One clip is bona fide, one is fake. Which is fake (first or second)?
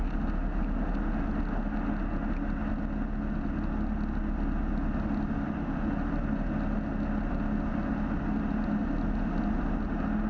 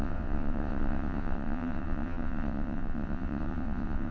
second